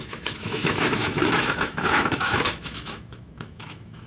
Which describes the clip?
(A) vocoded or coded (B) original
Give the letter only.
A